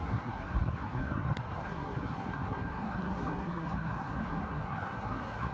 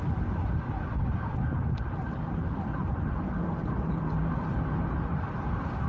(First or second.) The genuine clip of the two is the second